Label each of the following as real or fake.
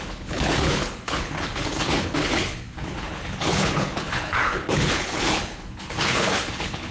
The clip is fake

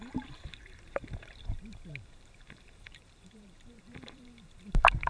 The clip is fake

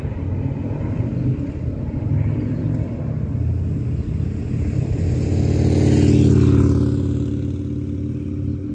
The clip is real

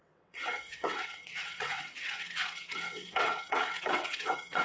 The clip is fake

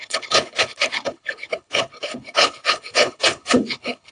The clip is fake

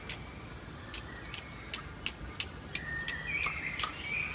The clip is real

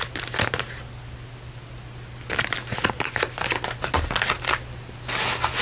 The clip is real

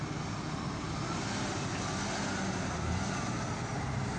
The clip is real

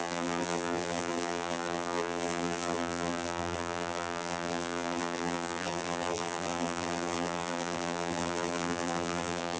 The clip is fake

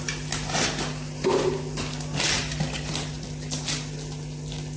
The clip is real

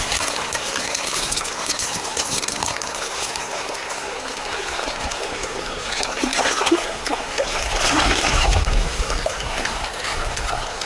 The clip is fake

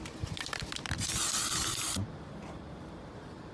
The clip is fake